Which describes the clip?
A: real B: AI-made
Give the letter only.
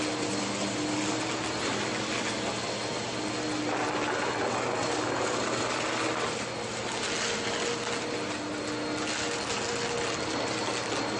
A